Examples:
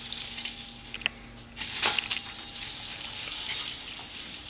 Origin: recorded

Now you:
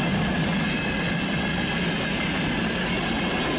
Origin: recorded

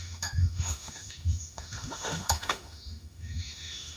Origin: remade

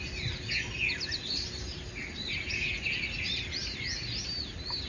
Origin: recorded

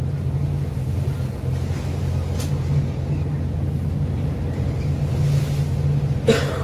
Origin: recorded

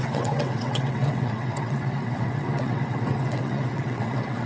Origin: remade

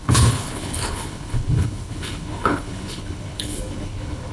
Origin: remade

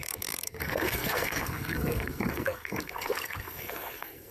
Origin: remade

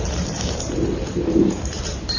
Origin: remade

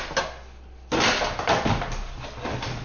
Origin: recorded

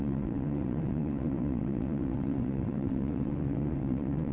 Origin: remade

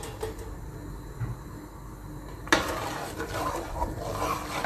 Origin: recorded